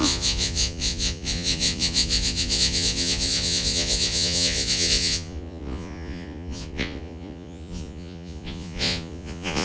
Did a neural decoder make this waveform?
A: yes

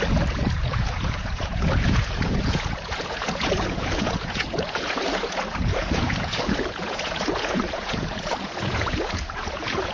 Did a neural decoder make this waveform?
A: yes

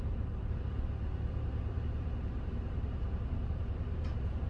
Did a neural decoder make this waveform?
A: yes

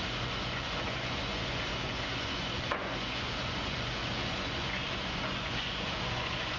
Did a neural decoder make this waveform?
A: yes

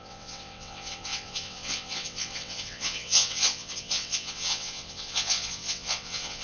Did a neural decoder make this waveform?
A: yes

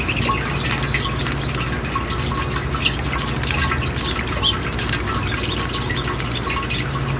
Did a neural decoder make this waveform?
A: no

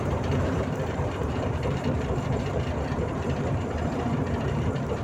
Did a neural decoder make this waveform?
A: yes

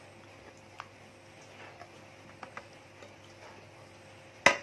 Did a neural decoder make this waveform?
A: no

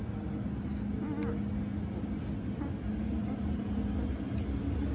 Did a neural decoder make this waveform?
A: no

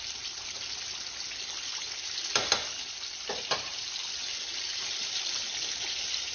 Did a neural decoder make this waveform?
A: no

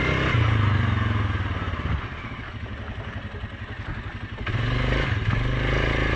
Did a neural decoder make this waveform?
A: no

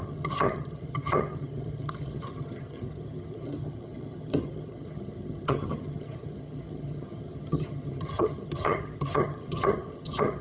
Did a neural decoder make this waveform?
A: yes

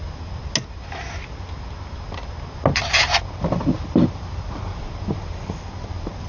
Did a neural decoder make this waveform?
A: no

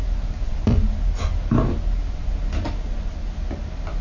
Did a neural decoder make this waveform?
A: no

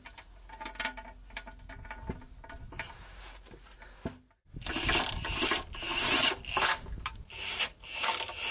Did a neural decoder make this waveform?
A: no